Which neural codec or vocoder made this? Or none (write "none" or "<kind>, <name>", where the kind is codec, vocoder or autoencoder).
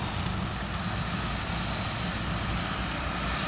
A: none